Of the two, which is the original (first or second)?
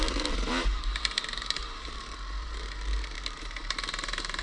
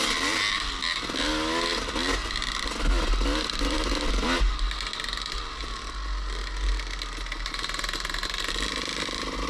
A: second